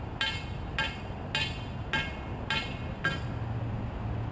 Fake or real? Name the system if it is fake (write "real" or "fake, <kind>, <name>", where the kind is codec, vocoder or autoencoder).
real